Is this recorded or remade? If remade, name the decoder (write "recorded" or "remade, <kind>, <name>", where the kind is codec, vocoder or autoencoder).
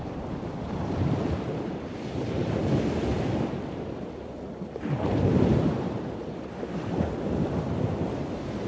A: recorded